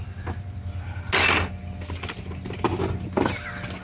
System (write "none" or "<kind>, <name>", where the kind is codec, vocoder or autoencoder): none